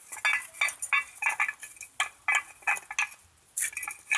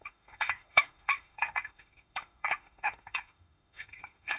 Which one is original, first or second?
first